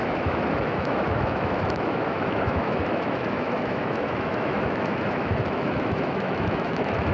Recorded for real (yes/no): no